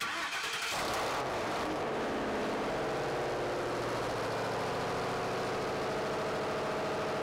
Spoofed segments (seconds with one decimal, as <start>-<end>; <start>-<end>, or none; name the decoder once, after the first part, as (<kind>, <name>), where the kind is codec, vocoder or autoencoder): none